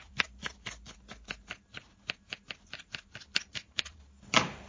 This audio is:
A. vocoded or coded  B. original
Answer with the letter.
B